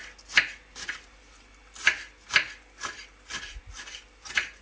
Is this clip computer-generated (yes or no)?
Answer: no